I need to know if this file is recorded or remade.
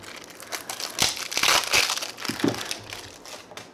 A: recorded